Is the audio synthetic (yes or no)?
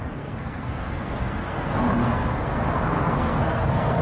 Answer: yes